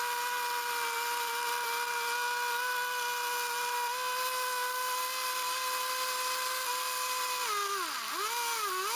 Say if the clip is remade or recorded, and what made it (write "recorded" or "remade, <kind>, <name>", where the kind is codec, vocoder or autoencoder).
recorded